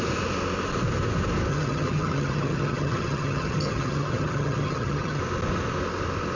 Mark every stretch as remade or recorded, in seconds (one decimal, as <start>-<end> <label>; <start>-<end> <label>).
0.0-1.5 recorded; 1.5-5.2 remade; 5.2-6.4 recorded